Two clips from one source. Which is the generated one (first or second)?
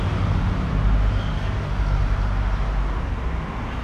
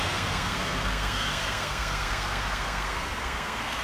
second